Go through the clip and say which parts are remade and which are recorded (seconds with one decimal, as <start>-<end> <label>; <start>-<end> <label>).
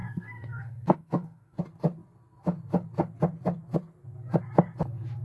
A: 0.0-1.6 remade; 1.6-5.2 recorded